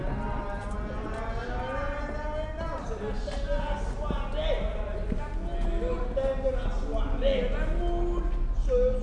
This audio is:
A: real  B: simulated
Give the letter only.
A